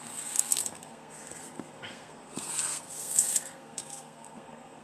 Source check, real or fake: fake